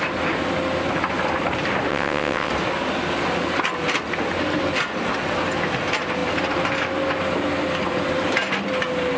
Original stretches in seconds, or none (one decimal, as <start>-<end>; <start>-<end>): 0.0-1.9; 2.5-9.2